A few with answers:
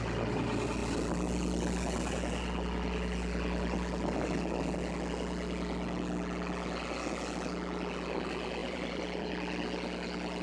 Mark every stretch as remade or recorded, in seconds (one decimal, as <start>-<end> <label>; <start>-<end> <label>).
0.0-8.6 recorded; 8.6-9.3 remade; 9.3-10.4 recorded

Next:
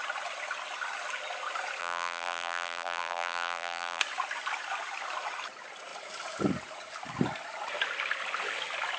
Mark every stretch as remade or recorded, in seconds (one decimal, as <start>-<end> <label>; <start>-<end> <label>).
0.0-1.8 recorded; 1.8-4.0 remade; 4.0-9.0 recorded

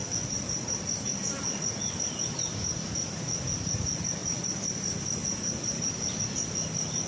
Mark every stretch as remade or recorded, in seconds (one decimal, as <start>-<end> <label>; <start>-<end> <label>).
0.0-1.0 remade; 1.0-4.2 recorded; 4.2-6.2 remade; 6.2-7.1 recorded